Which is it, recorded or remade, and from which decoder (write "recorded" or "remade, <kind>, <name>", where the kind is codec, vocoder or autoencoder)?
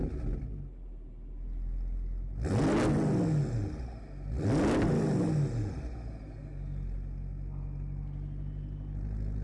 recorded